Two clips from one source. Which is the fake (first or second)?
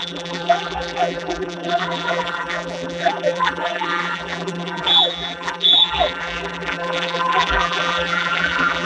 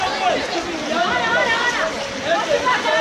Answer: first